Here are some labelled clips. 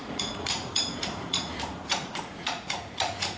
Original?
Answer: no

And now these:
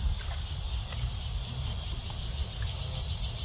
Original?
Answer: yes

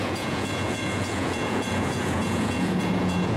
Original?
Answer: no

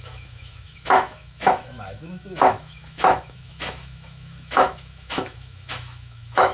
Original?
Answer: no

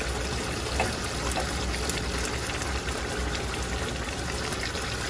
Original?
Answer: yes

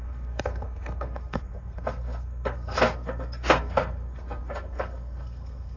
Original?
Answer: no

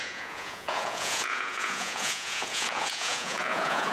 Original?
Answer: no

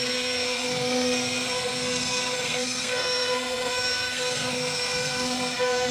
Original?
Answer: no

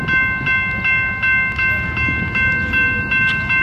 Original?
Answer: yes